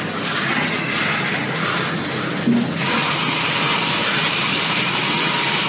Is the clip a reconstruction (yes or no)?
no